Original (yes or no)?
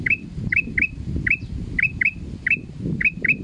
no